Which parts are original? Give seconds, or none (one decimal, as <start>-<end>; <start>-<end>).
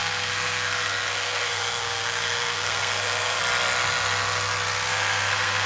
3.4-4.9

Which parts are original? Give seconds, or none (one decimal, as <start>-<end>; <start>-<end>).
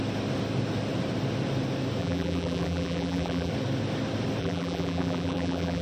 0.0-2.0; 3.5-4.4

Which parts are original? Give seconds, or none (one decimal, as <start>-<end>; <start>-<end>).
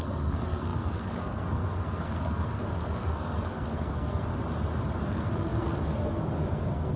4.3-5.1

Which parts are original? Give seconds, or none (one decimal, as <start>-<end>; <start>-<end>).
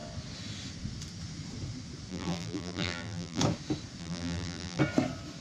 0.0-2.1; 3.4-4.0; 4.8-5.4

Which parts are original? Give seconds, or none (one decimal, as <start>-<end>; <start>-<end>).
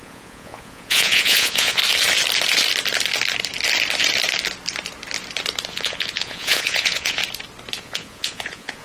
1.8-5.7; 7.2-7.8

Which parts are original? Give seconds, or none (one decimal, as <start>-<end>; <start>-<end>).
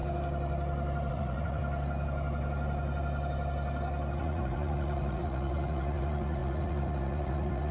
0.0-1.1; 1.6-4.2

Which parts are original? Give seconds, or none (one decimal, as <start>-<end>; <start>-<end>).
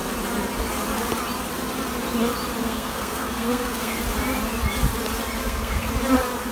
0.0-2.6; 4.0-5.4; 5.9-6.5